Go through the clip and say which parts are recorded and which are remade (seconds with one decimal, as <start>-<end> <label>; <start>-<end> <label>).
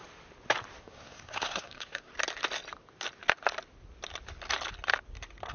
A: 0.0-0.8 recorded; 0.8-2.1 remade; 2.1-5.5 recorded